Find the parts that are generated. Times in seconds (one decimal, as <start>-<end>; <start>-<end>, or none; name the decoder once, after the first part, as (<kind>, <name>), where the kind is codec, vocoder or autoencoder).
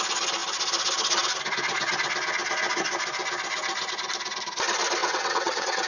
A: 5.0-5.9 (vocoder, WaveNeXt)